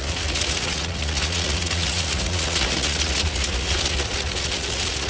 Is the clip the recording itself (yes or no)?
no